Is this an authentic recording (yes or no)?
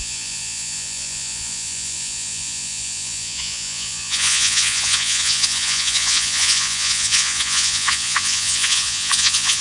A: no